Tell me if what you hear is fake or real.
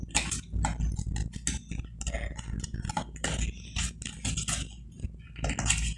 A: real